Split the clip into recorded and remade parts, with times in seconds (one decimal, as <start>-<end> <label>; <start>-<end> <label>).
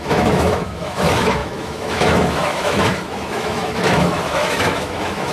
0.0-5.3 remade